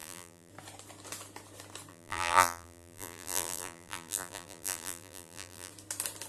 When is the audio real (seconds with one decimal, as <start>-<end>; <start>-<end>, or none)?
0.5-1.9; 5.7-6.3